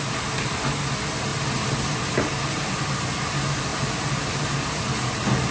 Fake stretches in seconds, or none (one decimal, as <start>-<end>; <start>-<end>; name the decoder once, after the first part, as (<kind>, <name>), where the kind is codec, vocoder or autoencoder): 3.7-4.8 (vocoder, BigVGAN v2)